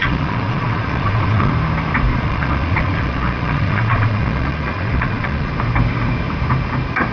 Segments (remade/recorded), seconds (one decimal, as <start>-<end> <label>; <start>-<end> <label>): 0.0-1.5 remade; 1.5-2.1 recorded; 2.1-5.5 remade; 5.5-7.1 recorded